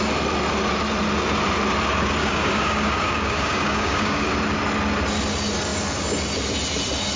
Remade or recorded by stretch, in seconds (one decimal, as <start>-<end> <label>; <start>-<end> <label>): 0.0-2.2 recorded; 2.2-4.3 remade; 4.3-7.2 recorded